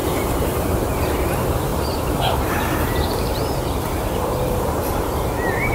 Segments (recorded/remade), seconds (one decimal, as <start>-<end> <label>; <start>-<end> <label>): 0.0-1.7 recorded; 1.7-5.1 remade; 5.1-5.7 recorded